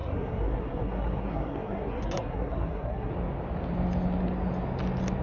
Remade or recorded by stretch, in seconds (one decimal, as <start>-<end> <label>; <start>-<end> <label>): 0.0-3.1 remade; 3.1-5.2 recorded

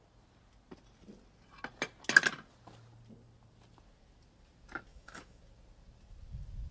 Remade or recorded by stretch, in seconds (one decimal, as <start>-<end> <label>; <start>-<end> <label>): 0.0-4.9 recorded; 4.9-5.4 remade; 5.4-6.7 recorded

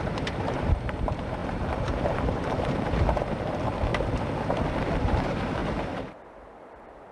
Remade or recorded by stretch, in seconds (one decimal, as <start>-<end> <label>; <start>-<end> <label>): 0.0-3.9 remade; 3.9-4.8 recorded; 4.8-7.1 remade

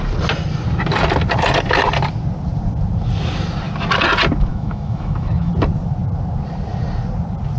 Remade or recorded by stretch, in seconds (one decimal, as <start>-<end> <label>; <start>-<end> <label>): 0.0-4.5 recorded; 4.5-5.5 remade; 5.5-7.6 recorded